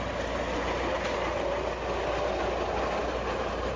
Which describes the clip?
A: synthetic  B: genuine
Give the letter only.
B